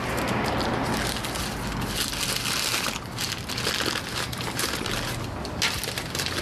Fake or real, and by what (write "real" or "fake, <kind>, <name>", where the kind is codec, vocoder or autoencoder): real